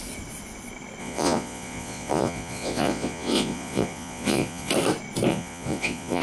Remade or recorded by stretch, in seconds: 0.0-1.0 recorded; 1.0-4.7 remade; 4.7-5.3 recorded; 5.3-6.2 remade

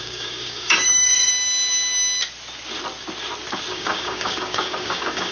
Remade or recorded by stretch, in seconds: 0.0-1.3 remade; 1.3-3.7 recorded; 3.7-5.3 remade

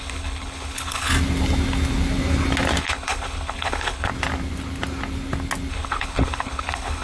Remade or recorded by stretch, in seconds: 0.0-1.1 remade; 1.1-2.8 recorded; 2.8-4.1 remade; 4.1-5.7 recorded; 5.7-7.0 remade

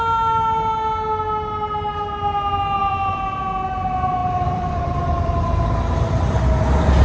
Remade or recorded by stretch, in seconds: 0.0-2.8 recorded; 2.8-3.4 remade; 3.4-4.2 recorded; 4.2-5.8 remade; 5.8-7.0 recorded

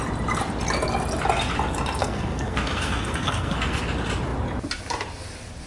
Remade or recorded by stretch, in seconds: 0.0-2.0 recorded; 2.0-3.8 remade; 3.8-5.7 recorded

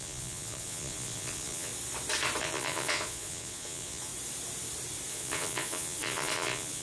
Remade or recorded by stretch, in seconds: 0.0-1.7 remade; 1.7-2.4 recorded; 2.4-4.1 remade; 4.1-5.1 recorded; 5.1-6.8 remade

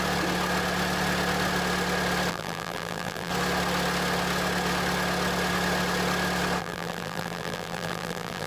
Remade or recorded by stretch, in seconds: 0.0-2.3 recorded; 2.3-3.3 remade; 3.3-6.6 recorded; 6.6-8.5 remade

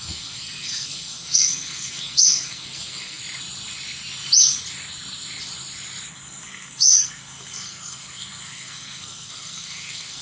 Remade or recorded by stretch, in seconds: 0.0-3.2 remade; 3.2-6.1 recorded; 6.1-10.2 remade